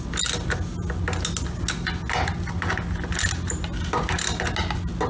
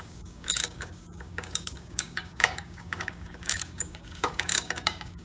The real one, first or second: first